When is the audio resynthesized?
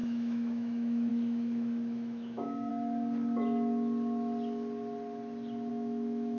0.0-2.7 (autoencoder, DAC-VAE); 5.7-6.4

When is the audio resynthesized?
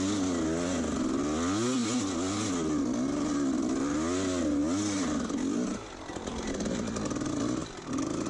none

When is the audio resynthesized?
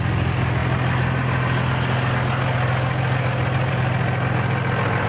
none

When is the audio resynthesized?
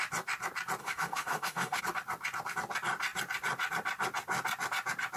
0.8-1.8 (autoencoder, DAC-VAE)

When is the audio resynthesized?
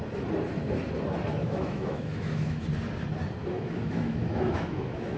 1.4-2.6 (autoencoder, DAC-VAE); 3.4-5.2